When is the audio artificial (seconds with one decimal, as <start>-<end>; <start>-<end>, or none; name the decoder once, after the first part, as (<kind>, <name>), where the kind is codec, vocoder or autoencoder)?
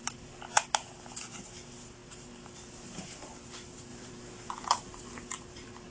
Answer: 1.5-2.0 (vocoder, BigVGAN v2); 2.5-5.9